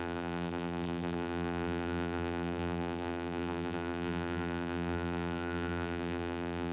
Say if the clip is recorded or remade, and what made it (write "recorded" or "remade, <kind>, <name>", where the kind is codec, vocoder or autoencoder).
remade, vocoder, BigVGAN v2